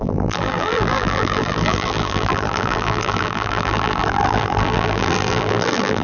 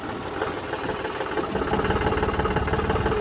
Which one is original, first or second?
second